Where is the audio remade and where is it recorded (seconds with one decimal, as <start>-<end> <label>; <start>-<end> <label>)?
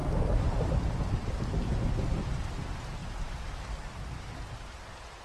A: 0.0-5.2 recorded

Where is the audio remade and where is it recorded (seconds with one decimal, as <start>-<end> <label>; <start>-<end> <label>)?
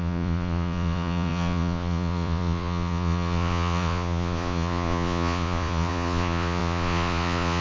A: 0.0-7.6 remade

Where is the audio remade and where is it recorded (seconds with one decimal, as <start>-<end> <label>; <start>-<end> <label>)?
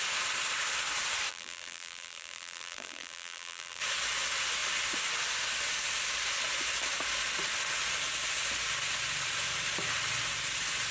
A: 0.0-1.3 recorded; 1.3-3.8 remade; 3.8-10.9 recorded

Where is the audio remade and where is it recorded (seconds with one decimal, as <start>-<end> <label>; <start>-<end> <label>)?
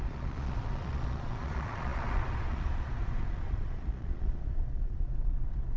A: 0.0-5.8 remade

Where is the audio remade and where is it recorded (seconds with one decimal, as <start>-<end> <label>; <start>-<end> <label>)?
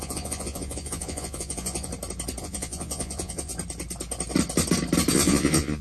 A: 0.0-1.9 remade; 1.9-2.4 recorded; 2.4-3.5 remade; 3.5-5.1 recorded; 5.1-5.8 remade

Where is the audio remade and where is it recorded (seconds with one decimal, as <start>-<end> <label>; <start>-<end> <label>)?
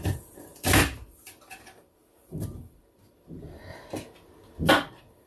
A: 0.0-2.0 remade; 2.0-2.7 recorded; 2.7-3.7 remade; 3.7-4.7 recorded; 4.7-5.3 remade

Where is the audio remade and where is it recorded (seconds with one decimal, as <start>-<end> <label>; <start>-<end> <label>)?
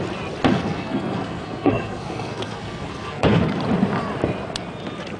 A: 0.0-0.5 recorded; 0.5-3.6 remade; 3.6-5.2 recorded